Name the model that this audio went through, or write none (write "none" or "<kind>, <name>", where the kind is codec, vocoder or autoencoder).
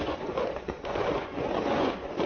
vocoder, Vocos